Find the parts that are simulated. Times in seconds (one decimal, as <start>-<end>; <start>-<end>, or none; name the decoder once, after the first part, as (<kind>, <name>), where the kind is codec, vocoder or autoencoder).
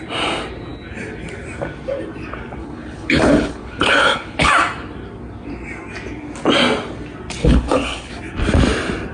2.6-4.5 (codec, HILCodec); 7.4-8.1